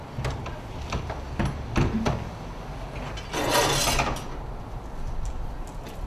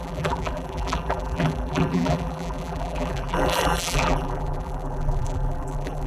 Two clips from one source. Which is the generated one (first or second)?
second